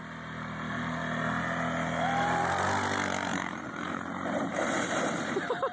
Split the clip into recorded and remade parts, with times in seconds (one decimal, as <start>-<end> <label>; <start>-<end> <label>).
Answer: 0.0-3.3 recorded; 3.3-5.0 remade; 5.0-5.7 recorded